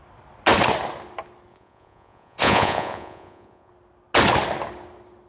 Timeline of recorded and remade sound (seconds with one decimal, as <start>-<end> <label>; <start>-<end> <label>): 0.0-1.5 recorded; 1.5-3.7 remade; 3.7-5.3 recorded